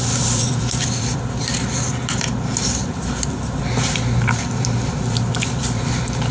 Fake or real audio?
fake